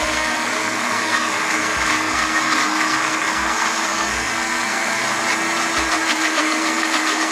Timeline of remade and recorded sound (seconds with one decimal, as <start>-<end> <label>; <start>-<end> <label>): 0.0-5.0 remade; 5.0-5.9 recorded; 5.9-7.3 remade